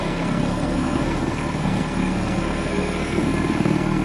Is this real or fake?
fake